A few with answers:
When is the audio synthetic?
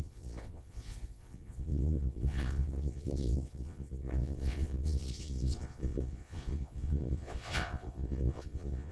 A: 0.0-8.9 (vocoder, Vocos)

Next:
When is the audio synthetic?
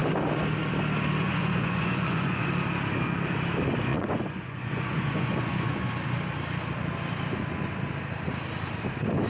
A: 1.2-2.5 (vocoder, Vocos); 3.9-5.9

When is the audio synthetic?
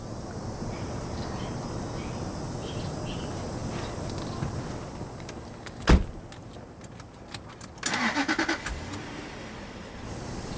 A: none